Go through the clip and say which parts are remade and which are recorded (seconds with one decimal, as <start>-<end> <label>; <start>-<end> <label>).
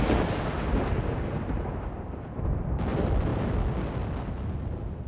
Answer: 0.0-5.1 recorded